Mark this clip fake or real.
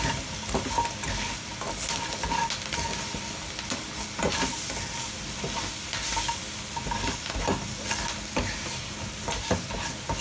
real